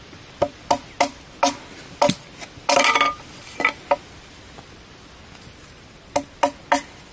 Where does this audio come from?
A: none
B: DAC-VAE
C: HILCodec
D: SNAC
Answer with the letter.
A